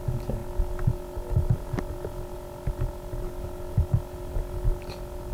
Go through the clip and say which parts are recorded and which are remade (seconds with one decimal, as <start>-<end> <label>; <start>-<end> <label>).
0.0-5.3 recorded